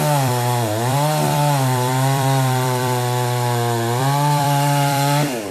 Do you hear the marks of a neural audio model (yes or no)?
yes